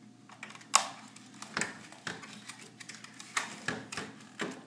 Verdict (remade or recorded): recorded